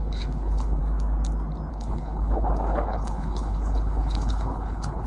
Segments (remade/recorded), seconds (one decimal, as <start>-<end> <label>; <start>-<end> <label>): 0.0-0.8 remade; 0.8-1.7 recorded; 1.7-5.1 remade